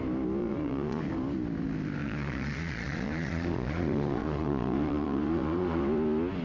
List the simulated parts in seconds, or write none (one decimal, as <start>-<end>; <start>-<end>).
0.4-1.0; 2.0-5.8